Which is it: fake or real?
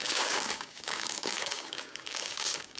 fake